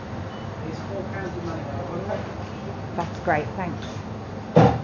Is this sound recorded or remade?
recorded